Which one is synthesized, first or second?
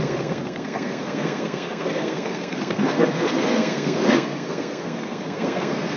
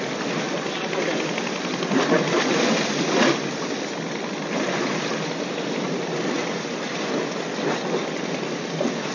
first